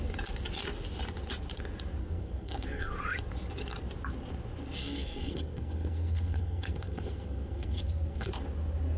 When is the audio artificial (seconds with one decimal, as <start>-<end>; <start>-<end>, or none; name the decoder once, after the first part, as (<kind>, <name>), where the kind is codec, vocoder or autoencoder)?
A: 2.0-2.9 (codec, SNAC); 4.8-8.3